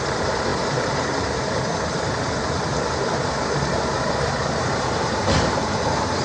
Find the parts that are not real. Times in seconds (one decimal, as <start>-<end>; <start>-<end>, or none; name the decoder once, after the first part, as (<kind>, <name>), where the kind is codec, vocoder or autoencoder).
0.0-1.7 (vocoder, BigVGAN v2); 3.4-6.2